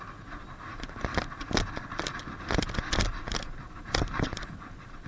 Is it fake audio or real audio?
real